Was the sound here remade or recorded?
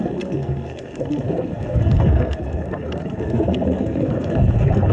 remade